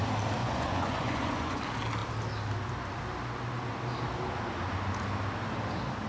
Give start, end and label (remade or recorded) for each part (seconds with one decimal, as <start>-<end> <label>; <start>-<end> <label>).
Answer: 0.0-0.4 recorded; 0.4-1.6 remade; 1.6-6.1 recorded